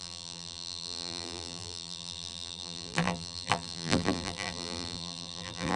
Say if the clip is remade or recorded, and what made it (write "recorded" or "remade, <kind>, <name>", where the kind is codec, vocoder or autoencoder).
remade, vocoder, BigVGAN v2